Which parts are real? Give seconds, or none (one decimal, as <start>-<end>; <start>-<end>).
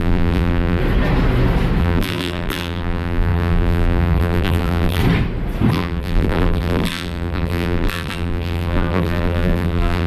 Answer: 0.8-1.8; 5.0-5.7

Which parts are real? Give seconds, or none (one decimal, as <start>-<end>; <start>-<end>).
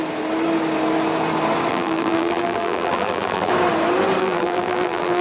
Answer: 0.0-1.7; 3.5-4.2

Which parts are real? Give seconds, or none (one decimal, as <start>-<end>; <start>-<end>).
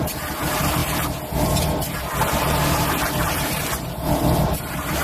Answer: none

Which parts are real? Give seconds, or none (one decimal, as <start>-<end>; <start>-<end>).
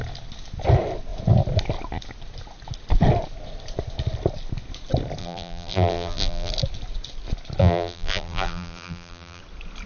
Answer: 0.0-5.2; 6.5-7.6; 9.4-9.9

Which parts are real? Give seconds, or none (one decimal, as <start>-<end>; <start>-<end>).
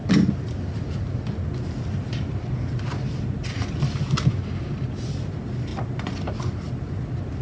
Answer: 4.1-5.7; 6.3-7.4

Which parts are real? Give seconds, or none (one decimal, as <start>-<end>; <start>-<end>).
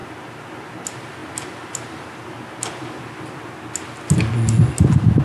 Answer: 0.0-5.2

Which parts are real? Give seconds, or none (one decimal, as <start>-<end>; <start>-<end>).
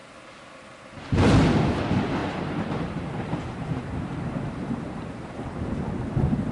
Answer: 0.0-2.2; 6.1-6.5